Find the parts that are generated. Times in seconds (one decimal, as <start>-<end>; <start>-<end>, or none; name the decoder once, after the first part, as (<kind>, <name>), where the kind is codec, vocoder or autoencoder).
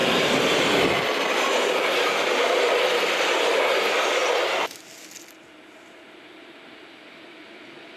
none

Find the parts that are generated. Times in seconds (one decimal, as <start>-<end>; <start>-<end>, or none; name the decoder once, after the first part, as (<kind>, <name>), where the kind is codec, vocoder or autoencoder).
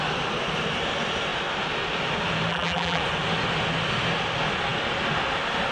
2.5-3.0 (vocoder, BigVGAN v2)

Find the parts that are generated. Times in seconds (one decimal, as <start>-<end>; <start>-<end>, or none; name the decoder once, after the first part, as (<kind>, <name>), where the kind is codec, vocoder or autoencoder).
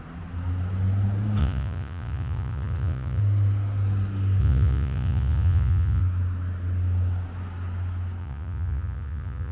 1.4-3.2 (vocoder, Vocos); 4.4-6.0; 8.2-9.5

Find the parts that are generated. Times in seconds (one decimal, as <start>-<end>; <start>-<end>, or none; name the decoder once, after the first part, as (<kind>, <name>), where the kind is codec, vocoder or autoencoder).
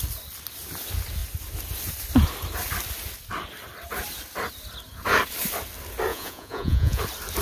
6.1-7.0 (vocoder, Vocos)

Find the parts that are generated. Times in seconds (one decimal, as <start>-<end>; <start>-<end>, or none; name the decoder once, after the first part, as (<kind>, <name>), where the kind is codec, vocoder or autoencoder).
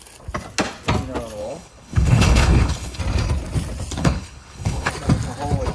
1.4-3.0 (codec, HILCodec); 4.0-4.9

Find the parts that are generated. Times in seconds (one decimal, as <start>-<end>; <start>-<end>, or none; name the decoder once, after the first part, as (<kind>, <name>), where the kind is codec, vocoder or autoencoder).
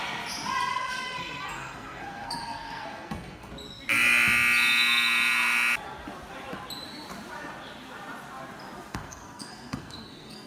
0.7-3.5 (codec, SNAC); 8.9-10.5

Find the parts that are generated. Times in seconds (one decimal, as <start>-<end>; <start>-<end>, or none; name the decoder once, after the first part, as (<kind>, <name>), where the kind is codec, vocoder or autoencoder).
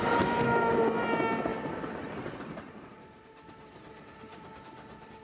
1.5-4.6 (vocoder, BigVGAN v2)